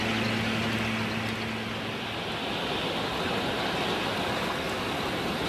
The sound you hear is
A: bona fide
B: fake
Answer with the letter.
A